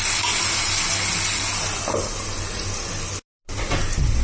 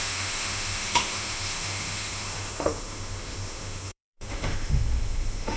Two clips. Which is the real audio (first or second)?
first